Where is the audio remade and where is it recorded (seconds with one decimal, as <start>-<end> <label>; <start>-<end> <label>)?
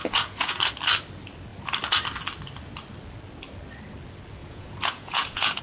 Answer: 0.0-0.6 remade; 0.6-4.4 recorded; 4.4-5.6 remade